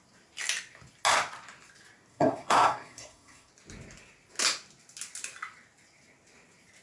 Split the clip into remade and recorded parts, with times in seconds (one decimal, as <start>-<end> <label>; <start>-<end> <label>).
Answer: 0.0-2.1 recorded; 2.1-3.5 remade; 3.5-6.8 recorded